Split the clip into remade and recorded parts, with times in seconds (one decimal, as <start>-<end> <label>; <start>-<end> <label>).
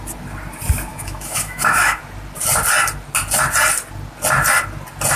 0.0-0.9 recorded; 0.9-2.0 remade; 2.0-5.2 recorded